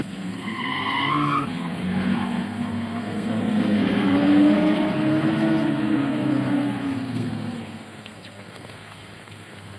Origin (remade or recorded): remade